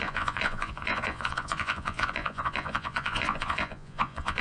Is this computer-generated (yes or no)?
yes